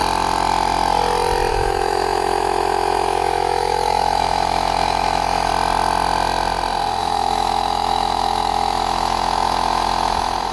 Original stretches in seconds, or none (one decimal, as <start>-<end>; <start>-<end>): 0.0-1.5; 5.5-7.0